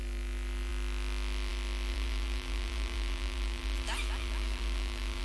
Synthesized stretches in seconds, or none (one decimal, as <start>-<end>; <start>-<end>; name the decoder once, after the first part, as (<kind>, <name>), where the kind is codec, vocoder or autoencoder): 1.9-5.2 (vocoder, BigVGAN v2)